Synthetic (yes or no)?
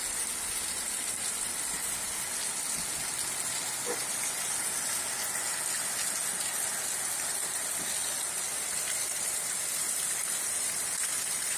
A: no